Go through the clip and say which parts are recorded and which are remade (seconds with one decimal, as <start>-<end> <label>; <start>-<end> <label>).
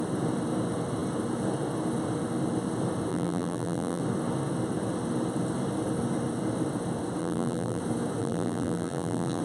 0.0-3.1 recorded; 3.1-4.0 remade; 4.0-7.2 recorded; 7.2-7.8 remade; 7.8-8.2 recorded; 8.2-9.4 remade